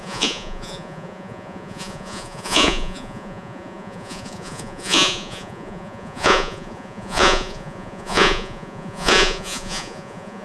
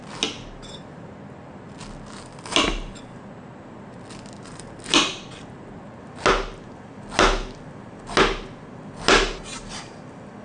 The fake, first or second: first